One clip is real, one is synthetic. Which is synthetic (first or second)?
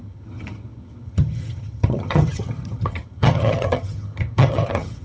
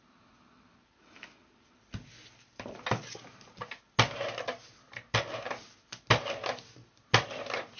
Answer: first